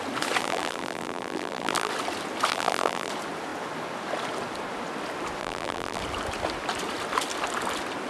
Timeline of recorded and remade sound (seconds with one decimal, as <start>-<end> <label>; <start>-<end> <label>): 0.0-0.4 recorded; 0.4-1.9 remade; 1.9-2.5 recorded; 2.5-3.1 remade; 3.1-5.4 recorded; 5.4-6.0 remade; 6.0-8.1 recorded